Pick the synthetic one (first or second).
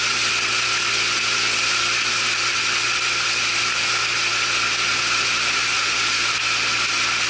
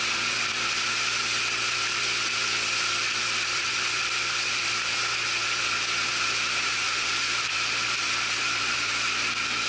second